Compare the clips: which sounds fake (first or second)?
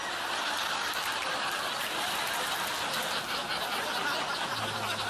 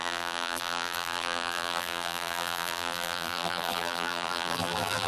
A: second